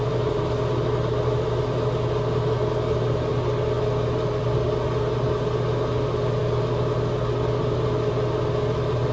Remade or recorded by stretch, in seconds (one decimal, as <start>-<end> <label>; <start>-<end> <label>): 0.0-9.1 recorded